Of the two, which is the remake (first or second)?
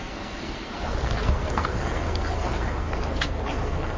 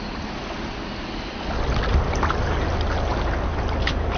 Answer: first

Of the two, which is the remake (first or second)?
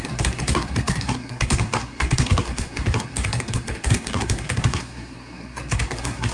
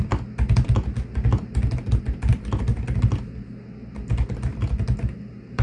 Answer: first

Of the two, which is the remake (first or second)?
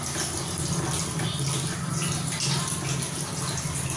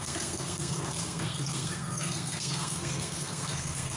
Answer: second